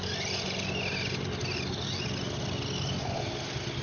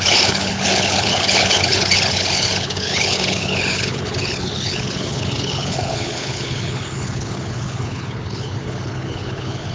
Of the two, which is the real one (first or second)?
first